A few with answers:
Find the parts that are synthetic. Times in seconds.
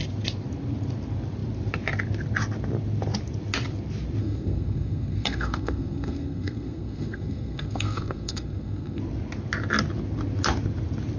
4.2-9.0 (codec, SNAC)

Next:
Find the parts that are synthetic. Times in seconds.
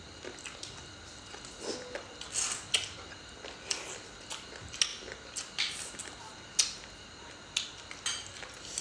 none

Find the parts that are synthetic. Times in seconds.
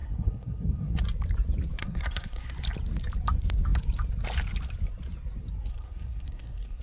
0.0-1.0 (codec, SNAC); 1.8-2.5; 5.7-6.8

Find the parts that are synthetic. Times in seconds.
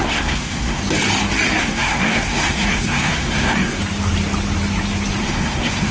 0.0-0.8 (codec, SNAC); 1.6-3.8; 5.2-5.9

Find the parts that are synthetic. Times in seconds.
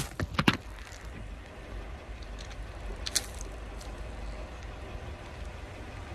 none